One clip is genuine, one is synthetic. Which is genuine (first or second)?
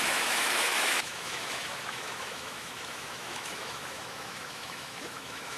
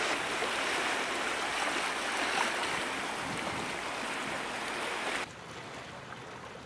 second